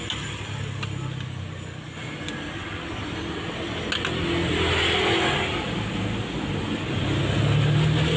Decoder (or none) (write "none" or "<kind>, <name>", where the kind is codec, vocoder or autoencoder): none